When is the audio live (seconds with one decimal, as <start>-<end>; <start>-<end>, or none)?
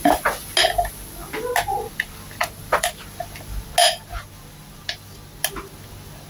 0.0-2.4; 2.9-6.3